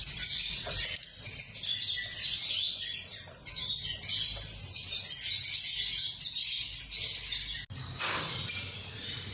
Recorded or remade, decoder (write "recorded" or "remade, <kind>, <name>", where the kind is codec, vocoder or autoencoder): recorded